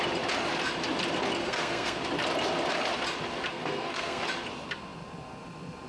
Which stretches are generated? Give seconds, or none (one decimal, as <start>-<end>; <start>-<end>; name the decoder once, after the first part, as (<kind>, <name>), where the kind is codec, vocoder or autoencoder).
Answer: 1.4-2.0 (codec, SNAC); 3.5-4.2